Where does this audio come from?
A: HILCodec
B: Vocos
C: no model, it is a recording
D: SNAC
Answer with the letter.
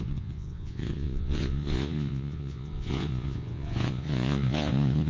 B